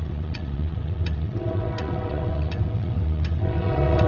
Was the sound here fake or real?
fake